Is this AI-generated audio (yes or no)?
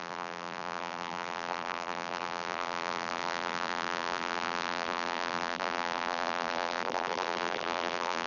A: yes